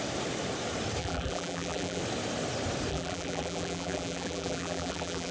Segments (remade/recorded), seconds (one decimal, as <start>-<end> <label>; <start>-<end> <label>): 0.0-1.0 recorded; 1.0-2.0 remade; 2.0-2.9 recorded; 2.9-5.3 remade